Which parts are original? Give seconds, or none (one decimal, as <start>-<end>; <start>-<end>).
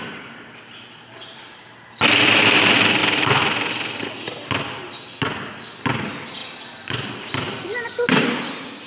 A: 0.0-8.9